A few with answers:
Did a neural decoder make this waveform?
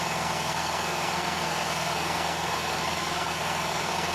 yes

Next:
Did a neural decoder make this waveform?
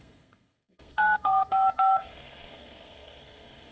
yes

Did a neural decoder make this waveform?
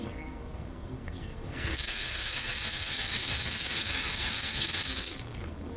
yes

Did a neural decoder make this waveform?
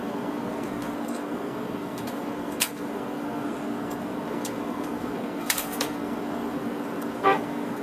yes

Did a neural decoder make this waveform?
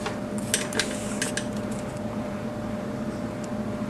no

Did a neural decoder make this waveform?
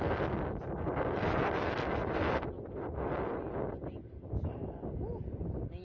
no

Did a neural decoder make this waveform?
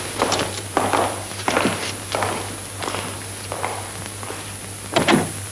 no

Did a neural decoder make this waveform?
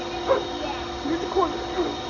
no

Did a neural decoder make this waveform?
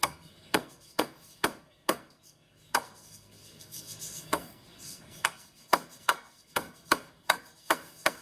yes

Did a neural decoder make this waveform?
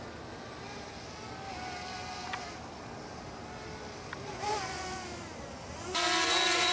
no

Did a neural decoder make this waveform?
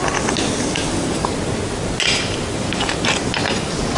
no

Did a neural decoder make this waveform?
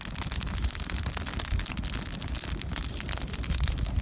no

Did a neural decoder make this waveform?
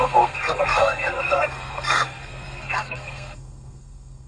yes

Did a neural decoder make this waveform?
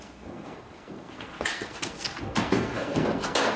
yes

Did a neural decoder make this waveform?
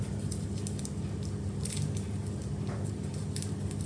no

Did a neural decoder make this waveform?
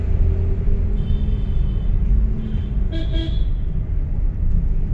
no